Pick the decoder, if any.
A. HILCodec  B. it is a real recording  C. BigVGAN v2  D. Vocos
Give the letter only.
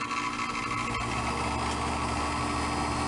B